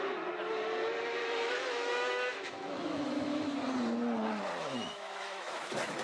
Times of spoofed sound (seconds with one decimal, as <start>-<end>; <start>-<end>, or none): 1.2-3.6; 4.6-6.0